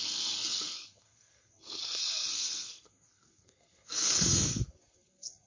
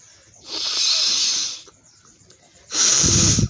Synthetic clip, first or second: first